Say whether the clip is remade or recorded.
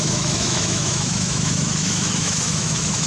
remade